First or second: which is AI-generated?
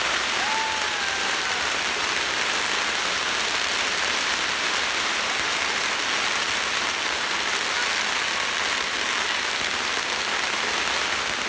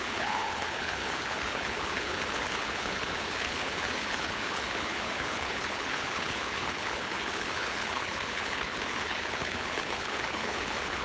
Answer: second